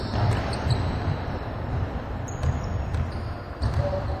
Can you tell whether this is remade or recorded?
recorded